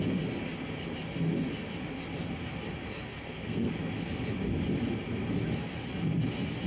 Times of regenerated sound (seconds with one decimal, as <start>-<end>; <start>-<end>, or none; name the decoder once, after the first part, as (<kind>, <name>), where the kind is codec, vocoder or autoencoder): 3.1-3.7 (codec, SNAC)